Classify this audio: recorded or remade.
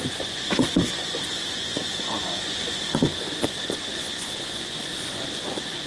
remade